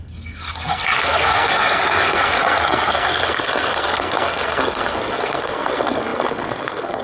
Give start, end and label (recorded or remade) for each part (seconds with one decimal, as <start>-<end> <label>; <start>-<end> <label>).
0.0-7.0 remade